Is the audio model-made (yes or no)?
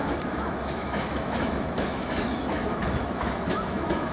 yes